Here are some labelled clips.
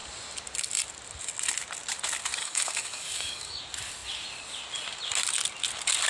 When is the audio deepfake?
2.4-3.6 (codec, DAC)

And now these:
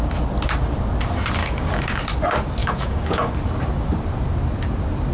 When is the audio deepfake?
1.4-2.0 (codec, DAC); 2.6-3.3